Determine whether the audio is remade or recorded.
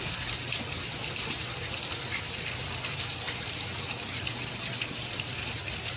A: recorded